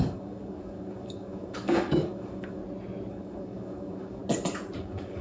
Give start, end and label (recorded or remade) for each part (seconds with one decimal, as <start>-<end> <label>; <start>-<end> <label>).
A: 0.0-2.6 remade; 2.6-3.1 recorded; 3.1-4.2 remade; 4.2-4.8 recorded; 4.8-5.2 remade